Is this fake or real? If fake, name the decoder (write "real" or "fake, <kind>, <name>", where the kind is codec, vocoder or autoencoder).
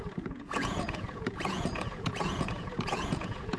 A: fake, vocoder, Vocos